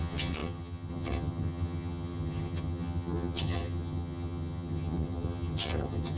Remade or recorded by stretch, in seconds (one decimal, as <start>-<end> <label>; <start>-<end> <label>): 0.0-6.2 remade